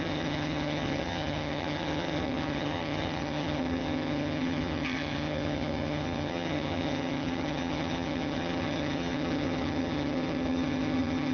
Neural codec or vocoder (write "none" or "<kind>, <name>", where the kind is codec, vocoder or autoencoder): vocoder, HiFi-GAN